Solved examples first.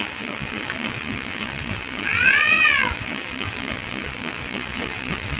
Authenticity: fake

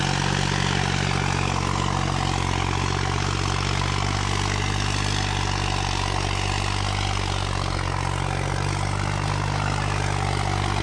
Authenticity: real